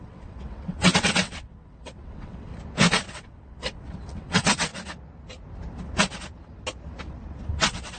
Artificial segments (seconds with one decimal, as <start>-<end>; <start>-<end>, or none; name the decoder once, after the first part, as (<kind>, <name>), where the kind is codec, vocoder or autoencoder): 0.0-2.5 (vocoder, WaveNeXt); 3.1-4.7; 7.5-8.0